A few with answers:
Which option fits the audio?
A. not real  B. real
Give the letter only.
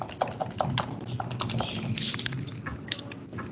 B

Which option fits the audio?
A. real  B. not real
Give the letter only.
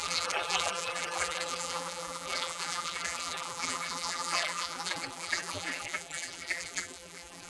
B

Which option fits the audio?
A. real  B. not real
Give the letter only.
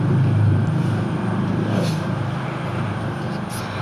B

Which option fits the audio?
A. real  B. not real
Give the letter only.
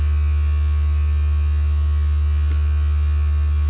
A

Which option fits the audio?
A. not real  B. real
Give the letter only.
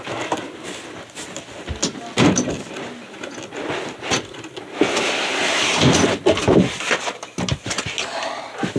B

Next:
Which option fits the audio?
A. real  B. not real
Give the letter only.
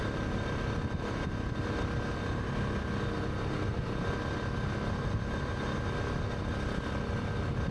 A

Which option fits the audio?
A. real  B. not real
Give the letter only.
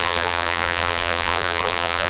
B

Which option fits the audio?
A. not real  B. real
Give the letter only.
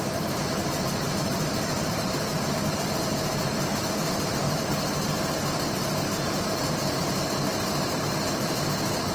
A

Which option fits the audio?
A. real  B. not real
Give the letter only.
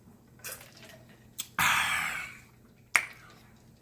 A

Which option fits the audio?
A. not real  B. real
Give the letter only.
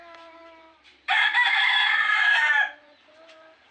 A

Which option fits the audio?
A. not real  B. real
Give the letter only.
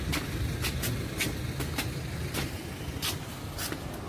B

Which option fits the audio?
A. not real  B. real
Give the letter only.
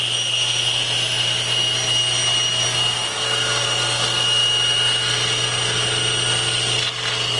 B